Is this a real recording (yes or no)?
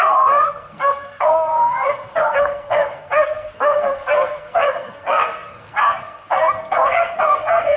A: no